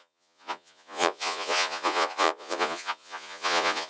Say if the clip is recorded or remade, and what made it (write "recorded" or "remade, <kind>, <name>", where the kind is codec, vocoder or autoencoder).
remade, vocoder, Vocos